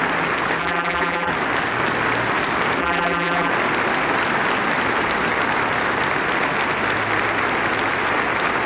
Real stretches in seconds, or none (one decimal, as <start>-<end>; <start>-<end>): 0.0-0.6; 1.3-2.8; 3.5-8.7